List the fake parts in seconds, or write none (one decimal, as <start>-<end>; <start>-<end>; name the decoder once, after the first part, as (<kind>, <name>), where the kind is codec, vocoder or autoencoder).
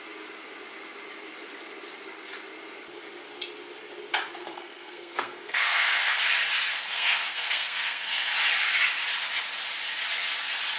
4.4-6.2 (codec, SNAC); 6.7-8.3